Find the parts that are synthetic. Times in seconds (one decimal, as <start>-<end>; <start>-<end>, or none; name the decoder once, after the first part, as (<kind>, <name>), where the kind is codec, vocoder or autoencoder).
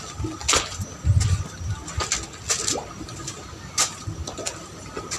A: none